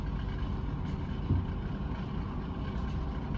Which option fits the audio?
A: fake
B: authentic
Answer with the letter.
B